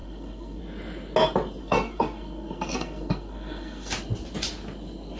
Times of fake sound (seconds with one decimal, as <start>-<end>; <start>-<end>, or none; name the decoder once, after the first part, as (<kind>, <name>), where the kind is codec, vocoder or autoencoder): 0.0-0.6 (codec, SNAC); 1.6-3.9